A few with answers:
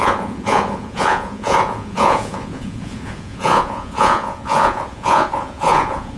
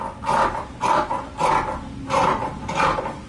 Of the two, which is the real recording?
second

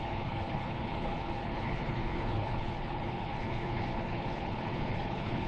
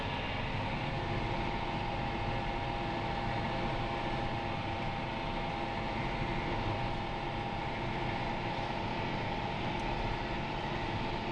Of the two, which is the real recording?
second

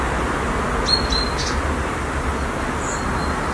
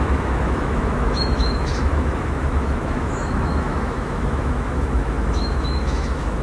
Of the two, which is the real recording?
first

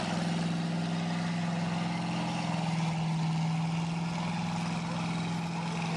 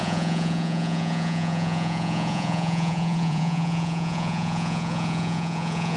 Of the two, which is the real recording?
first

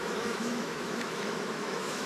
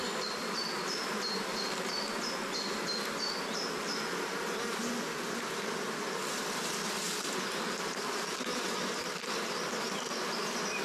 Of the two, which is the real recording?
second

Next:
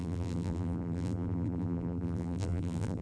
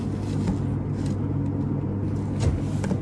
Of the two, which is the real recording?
second